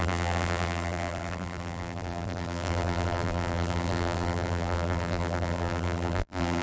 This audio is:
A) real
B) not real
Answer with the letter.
B